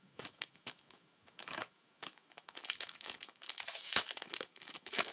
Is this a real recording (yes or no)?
no